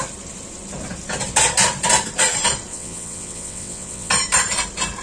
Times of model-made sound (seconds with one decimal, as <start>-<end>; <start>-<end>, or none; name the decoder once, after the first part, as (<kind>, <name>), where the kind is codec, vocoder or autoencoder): 2.7-4.1 (vocoder, WaveNeXt)